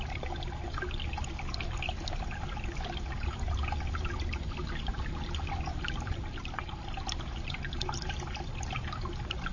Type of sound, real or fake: real